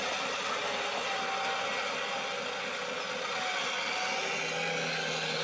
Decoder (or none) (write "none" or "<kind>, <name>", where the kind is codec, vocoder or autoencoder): none